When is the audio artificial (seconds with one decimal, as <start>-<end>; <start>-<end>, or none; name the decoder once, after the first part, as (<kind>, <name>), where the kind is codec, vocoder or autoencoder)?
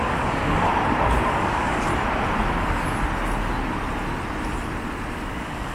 0.0-0.7 (codec, DAC); 1.3-1.9; 5.3-5.7